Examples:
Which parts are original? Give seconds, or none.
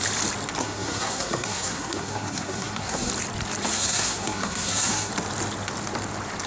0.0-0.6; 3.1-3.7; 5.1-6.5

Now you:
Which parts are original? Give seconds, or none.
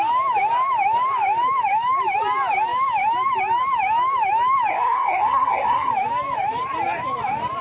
0.0-4.7; 5.9-7.6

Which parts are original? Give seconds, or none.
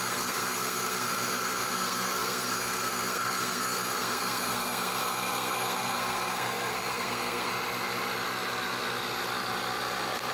7.5-10.3